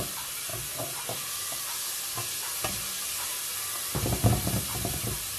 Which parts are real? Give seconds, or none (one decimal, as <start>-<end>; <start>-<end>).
0.0-5.4